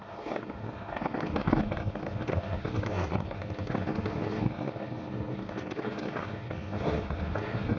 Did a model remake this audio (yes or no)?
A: yes